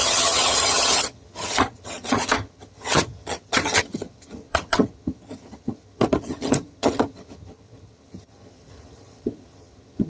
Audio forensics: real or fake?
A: fake